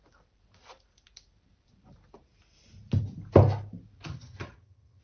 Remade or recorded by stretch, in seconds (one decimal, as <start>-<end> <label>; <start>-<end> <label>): 0.0-4.1 recorded; 4.1-5.0 remade